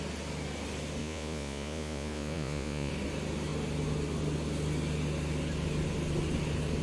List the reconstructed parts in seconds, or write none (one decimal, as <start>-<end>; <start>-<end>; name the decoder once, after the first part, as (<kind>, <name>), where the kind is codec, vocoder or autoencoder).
1.0-2.9 (vocoder, Vocos)